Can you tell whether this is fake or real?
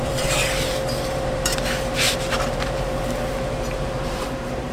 fake